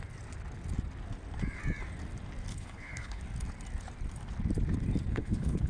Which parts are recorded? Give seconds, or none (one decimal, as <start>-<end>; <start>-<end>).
0.0-2.5; 3.2-5.1